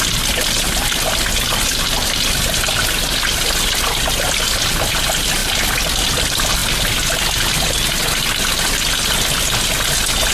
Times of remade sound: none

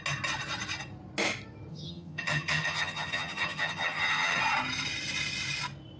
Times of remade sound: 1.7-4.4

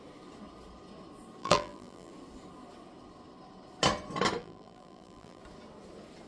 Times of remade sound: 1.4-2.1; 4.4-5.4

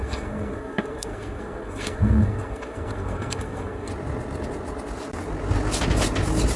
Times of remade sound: 0.0-3.9

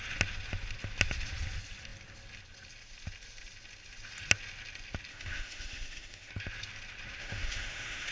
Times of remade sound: 5.1-6.3; 7.2-8.1